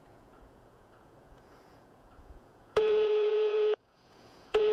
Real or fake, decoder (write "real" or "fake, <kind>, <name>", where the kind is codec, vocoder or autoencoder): fake, vocoder, Vocos